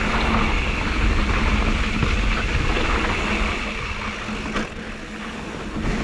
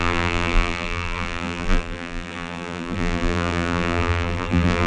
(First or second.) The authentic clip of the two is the first